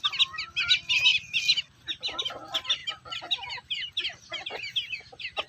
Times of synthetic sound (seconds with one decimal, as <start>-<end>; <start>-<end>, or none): none